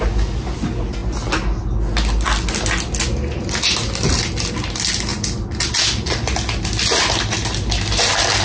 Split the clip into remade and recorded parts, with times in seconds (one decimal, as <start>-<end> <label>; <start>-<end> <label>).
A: 0.0-8.4 recorded